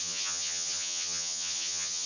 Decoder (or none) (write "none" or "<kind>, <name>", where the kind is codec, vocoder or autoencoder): vocoder, HiFi-GAN